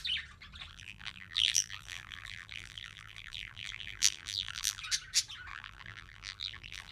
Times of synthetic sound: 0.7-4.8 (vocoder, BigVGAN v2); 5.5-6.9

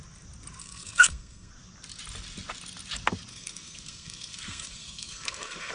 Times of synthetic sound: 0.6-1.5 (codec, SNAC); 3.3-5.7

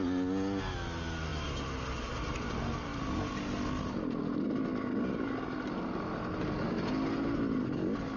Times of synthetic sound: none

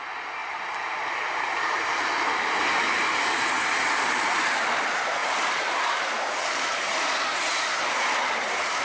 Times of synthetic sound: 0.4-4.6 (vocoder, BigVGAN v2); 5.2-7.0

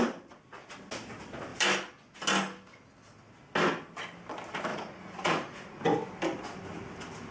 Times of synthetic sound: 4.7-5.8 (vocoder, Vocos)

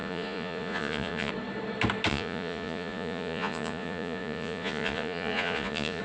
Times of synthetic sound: 0.0-1.3 (vocoder, Vocos); 2.1-6.0

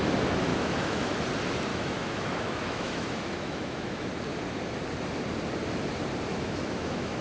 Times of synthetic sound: 0.5-1.2 (autoencoder, DAC-VAE); 1.7-4.1; 6.3-7.2